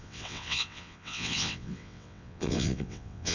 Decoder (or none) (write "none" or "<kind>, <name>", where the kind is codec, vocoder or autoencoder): vocoder, WaveNeXt